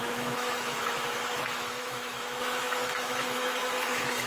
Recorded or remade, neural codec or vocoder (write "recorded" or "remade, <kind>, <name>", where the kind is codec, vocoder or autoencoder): remade, autoencoder, DAC-VAE